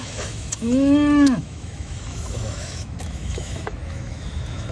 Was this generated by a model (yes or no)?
yes